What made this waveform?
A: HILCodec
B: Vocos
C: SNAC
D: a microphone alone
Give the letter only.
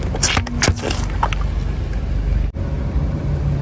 D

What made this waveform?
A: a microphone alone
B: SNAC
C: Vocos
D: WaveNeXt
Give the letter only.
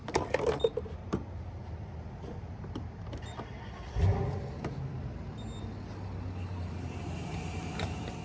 A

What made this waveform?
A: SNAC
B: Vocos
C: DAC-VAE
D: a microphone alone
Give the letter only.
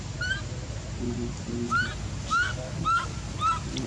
D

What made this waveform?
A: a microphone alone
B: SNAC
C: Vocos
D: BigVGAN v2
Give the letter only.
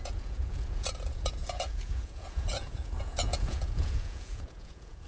C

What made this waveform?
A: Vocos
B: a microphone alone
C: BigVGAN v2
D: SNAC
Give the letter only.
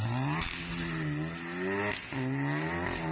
B